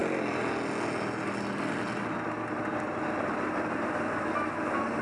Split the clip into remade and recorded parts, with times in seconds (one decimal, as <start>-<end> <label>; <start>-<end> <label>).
0.0-5.0 recorded